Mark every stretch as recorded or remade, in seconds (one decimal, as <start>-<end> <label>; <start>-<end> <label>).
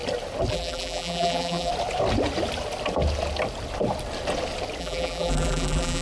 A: 0.0-0.5 recorded; 0.5-1.7 remade; 1.7-4.8 recorded; 4.8-6.0 remade